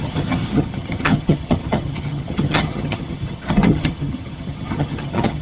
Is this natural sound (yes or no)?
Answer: no